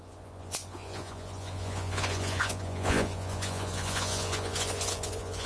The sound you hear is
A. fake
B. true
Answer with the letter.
A